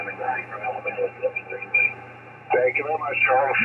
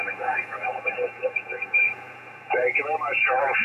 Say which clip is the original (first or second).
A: first